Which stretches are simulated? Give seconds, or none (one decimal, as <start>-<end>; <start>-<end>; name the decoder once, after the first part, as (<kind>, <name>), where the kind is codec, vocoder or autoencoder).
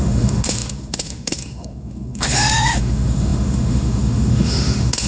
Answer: 0.0-5.1 (autoencoder, DAC-VAE)